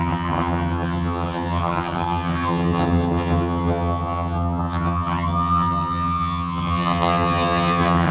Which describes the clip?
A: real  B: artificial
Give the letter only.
B